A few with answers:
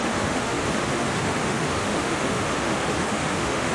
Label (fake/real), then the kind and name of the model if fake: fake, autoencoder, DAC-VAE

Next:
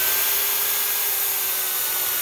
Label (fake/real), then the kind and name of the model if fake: real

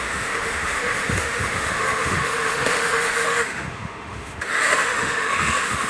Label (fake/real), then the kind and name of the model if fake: fake, autoencoder, DAC-VAE